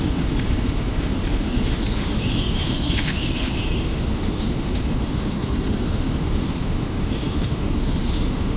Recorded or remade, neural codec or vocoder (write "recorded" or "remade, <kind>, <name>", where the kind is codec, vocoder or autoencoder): remade, autoencoder, DAC-VAE